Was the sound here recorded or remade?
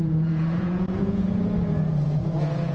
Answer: remade